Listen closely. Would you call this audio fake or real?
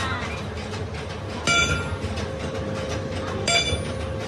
real